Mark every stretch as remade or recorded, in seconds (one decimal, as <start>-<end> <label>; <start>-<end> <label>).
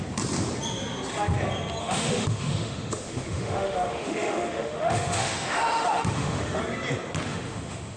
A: 0.0-1.8 recorded; 1.8-6.6 remade; 6.6-7.3 recorded; 7.3-8.0 remade